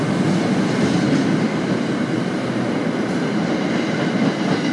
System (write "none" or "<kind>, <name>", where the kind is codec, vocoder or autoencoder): none